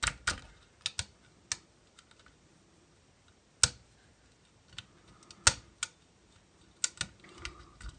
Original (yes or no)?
yes